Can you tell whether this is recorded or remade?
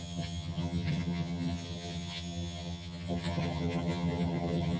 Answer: remade